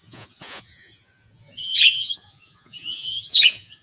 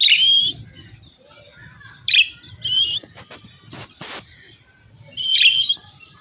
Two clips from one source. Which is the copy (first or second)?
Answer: first